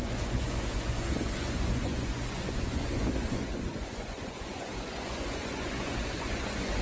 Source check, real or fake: fake